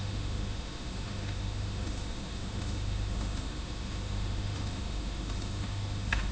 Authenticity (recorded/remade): remade